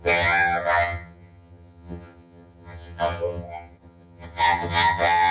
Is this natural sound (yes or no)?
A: no